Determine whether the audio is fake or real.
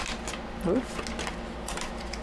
real